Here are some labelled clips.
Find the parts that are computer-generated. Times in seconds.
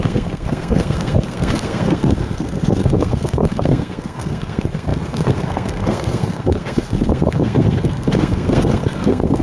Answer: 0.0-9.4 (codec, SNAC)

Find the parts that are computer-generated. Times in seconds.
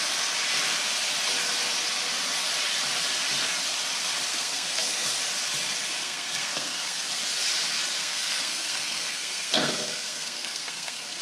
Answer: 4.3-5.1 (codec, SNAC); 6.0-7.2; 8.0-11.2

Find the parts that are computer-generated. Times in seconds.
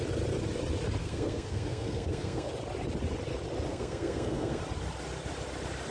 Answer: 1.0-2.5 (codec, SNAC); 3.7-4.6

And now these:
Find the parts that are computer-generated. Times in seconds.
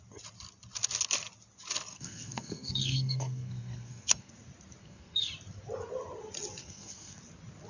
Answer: 1.9-4.3 (codec, SNAC); 4.8-5.3; 6.6-7.2